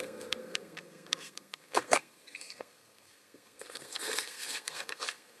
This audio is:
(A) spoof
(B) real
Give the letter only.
A